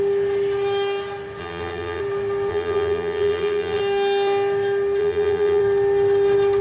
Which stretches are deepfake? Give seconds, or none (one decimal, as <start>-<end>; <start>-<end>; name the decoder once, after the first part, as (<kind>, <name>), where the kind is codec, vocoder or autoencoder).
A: 1.4-2.0 (vocoder, BigVGAN v2); 2.5-3.8; 5.0-5.6